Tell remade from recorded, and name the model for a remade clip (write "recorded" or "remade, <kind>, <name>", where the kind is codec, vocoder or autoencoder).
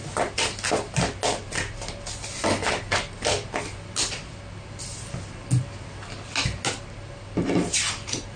recorded